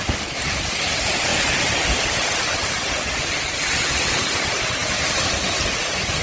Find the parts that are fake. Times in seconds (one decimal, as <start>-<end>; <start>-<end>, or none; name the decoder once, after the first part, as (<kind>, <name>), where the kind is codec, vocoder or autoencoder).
none